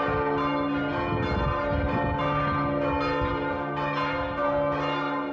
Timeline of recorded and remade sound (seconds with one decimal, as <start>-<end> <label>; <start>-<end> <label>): 0.0-5.3 recorded